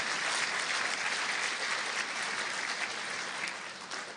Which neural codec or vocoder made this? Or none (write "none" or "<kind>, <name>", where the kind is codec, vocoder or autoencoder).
none